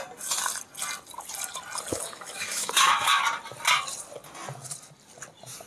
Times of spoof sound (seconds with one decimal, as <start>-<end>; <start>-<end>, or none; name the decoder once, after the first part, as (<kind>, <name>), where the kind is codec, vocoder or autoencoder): 1.9-3.2 (autoencoder, DAC-VAE)